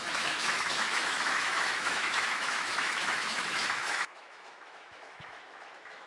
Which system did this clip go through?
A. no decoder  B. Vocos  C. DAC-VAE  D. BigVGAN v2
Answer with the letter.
C